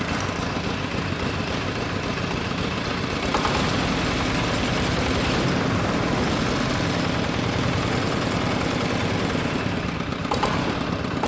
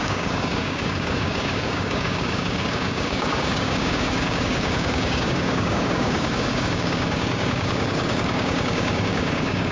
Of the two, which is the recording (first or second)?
first